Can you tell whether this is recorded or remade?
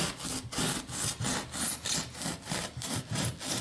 recorded